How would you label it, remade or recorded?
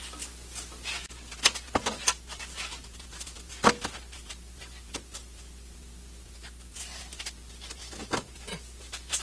recorded